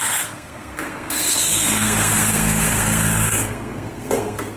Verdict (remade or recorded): remade